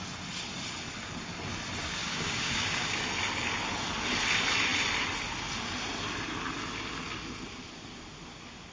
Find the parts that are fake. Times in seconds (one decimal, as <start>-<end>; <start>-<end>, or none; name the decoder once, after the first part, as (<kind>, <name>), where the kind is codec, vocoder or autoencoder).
2.0-3.0 (codec, DAC)